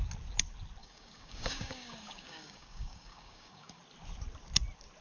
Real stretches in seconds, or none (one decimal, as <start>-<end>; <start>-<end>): 0.0-0.8; 3.8-5.0